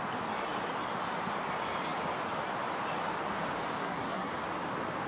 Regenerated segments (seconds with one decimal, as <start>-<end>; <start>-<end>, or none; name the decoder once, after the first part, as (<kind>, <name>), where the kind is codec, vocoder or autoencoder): 3.8-4.3 (codec, SNAC)